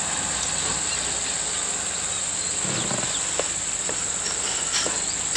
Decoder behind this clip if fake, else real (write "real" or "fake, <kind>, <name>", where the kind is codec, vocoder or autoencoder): real